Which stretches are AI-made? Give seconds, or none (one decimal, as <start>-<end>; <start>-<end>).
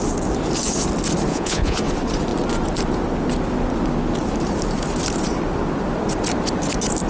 1.3-1.8